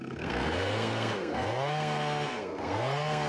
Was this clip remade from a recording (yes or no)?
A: yes